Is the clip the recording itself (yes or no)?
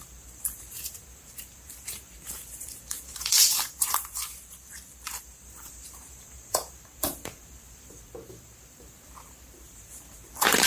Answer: no